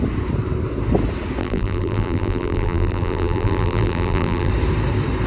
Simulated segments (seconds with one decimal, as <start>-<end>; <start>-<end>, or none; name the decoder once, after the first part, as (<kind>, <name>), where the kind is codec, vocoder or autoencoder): 1.4-4.5 (vocoder, BigVGAN v2)